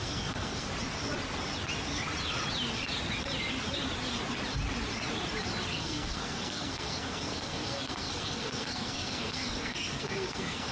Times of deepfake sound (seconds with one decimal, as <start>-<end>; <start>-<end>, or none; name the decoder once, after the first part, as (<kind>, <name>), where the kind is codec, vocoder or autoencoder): 0.0-0.7 (codec, SNAC); 5.7-10.7